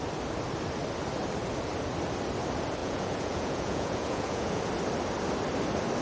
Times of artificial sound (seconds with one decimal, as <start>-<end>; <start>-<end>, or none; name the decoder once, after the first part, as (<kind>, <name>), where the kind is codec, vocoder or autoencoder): 2.8-4.6 (vocoder, Vocos)